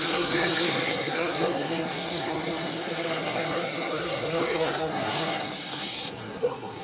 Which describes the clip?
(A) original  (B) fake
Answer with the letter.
B